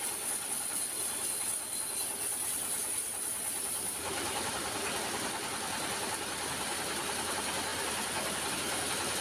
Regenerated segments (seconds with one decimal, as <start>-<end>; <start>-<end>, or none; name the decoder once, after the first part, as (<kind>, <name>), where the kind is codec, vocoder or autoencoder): 2.3-4.5 (vocoder, BigVGAN v2)